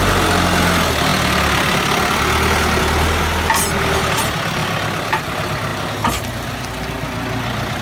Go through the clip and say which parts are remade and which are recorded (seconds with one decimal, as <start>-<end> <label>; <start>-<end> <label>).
0.0-7.8 recorded